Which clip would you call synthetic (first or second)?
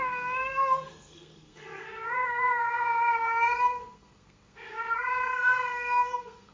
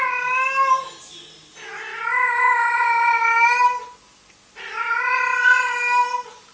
first